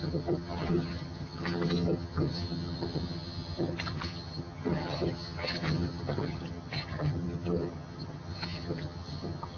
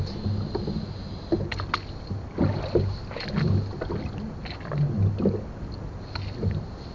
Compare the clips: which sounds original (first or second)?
second